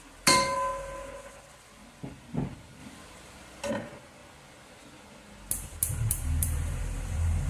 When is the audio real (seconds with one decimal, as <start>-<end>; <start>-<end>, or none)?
0.7-1.5; 4.2-6.1